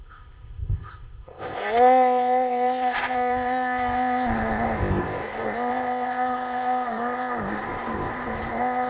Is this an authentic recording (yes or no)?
no